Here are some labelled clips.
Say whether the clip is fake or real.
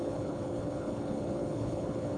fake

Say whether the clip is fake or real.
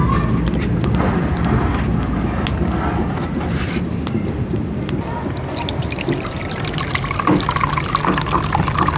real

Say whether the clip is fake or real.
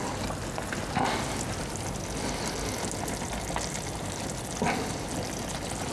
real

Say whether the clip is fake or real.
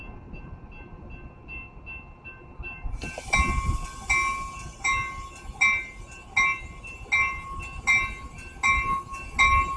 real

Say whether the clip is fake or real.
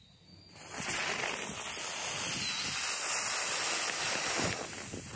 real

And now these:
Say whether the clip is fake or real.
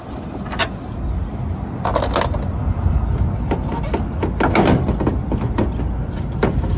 real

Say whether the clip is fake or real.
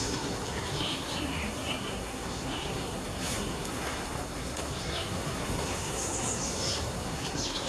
fake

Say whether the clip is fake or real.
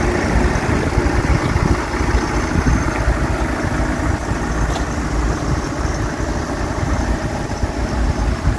real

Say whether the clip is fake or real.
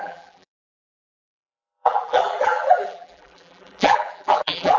fake